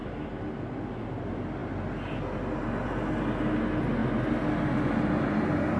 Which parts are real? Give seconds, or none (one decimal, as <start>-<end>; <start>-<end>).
0.0-5.8